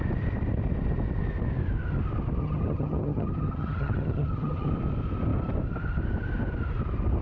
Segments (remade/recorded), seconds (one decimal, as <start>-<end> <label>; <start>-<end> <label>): 0.0-2.4 recorded; 2.4-4.7 remade; 4.7-7.2 recorded